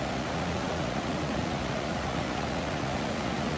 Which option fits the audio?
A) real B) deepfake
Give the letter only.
B